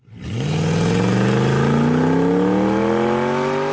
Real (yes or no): yes